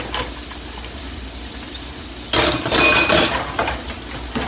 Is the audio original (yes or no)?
yes